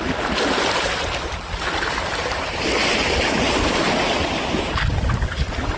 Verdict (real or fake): real